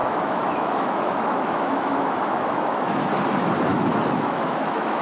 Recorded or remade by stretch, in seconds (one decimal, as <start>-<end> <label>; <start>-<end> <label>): 0.0-3.0 remade; 3.0-3.7 recorded; 3.7-5.0 remade